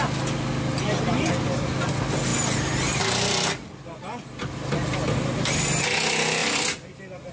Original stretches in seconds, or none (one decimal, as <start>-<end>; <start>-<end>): 0.0-7.3